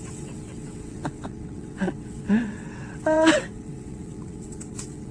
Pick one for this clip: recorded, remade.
remade